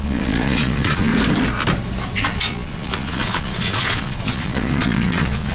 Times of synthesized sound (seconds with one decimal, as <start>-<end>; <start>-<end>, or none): 0.0-1.1; 2.2-5.5